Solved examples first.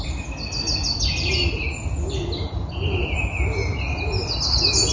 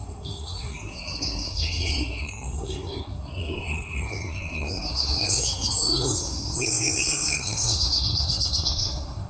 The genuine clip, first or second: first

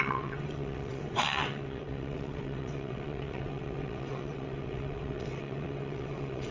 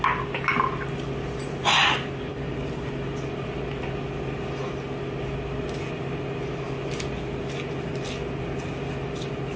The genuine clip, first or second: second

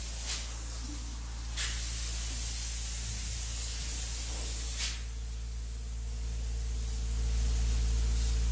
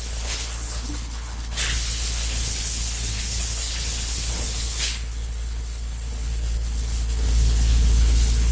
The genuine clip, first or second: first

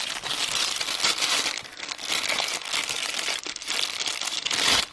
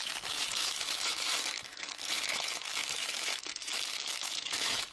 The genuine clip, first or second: first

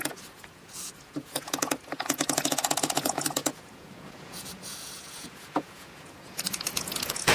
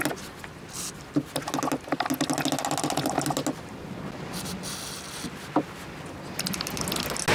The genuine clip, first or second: second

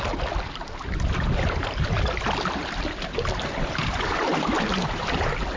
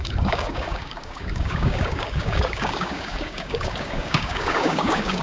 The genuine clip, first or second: first